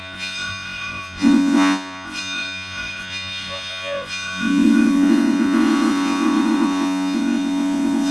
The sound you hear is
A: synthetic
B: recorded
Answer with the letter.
A